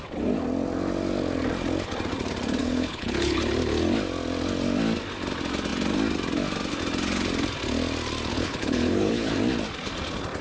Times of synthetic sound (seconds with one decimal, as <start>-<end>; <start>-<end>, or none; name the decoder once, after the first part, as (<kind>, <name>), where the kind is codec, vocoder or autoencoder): 2.6-3.4 (codec, HILCodec); 8.3-9.3